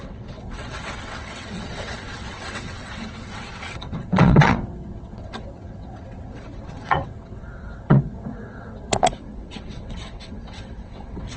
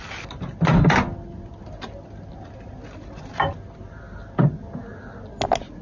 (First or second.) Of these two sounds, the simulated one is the first